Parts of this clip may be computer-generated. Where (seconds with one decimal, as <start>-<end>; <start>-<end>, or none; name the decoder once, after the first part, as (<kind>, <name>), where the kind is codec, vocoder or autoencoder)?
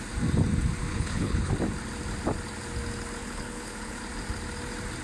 0.9-1.5 (codec, HILCodec); 3.2-4.0